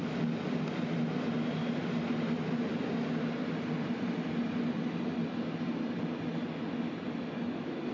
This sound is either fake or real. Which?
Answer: real